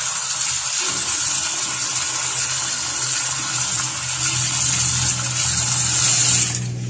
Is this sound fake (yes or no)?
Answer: no